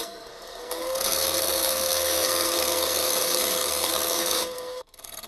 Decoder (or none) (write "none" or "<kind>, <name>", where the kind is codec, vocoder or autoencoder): codec, SNAC